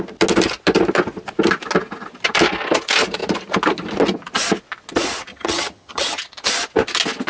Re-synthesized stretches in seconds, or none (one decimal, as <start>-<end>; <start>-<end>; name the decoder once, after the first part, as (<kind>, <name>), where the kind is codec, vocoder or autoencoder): 5.3-6.2 (vocoder, HiFi-GAN)